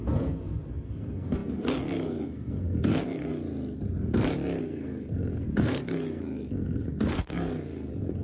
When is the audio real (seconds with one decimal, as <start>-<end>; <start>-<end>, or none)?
3.3-4.6